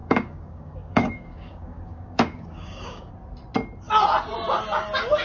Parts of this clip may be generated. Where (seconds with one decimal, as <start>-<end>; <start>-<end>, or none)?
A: 0.0-3.1